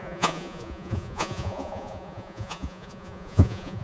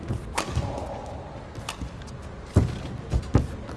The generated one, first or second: first